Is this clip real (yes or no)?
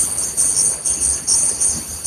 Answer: yes